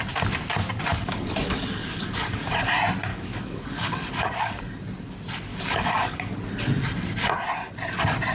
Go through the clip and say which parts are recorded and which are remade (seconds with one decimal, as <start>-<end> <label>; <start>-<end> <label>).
0.0-0.9 recorded; 0.9-2.6 remade; 2.6-3.1 recorded; 3.1-4.6 remade; 4.6-5.5 recorded; 5.5-6.3 remade; 6.3-8.3 recorded